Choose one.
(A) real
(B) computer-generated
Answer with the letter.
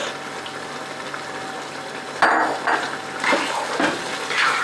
A